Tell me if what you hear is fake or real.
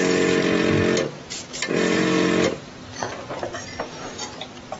real